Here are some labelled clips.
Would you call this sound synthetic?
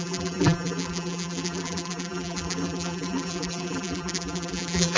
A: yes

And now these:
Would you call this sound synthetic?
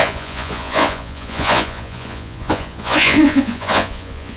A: yes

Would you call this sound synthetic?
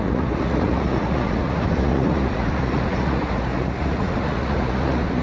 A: yes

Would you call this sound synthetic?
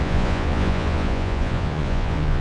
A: yes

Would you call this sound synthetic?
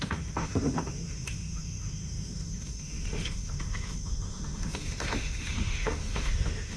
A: yes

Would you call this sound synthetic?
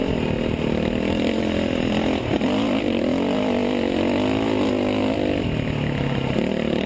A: no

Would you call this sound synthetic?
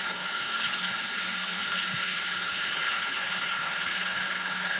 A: yes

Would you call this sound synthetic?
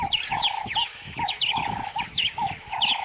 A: yes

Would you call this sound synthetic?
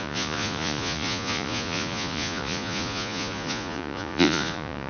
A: yes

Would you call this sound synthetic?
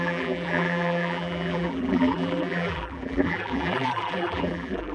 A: yes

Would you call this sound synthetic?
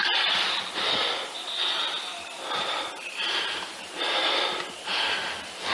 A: no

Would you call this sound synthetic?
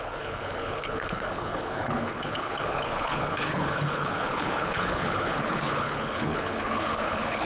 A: yes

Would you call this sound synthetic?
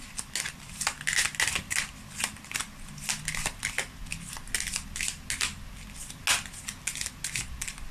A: no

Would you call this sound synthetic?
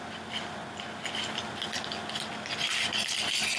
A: no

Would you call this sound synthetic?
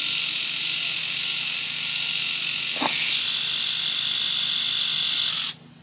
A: no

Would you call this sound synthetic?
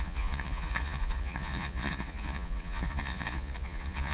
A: yes